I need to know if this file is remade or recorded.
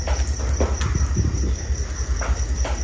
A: recorded